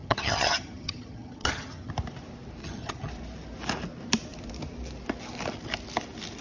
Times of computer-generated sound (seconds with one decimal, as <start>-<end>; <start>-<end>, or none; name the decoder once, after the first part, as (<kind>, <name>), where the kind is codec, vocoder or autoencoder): 0.0-1.9 (vocoder, HiFi-GAN); 2.6-3.1